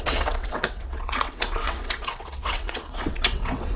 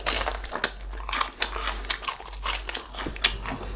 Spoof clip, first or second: first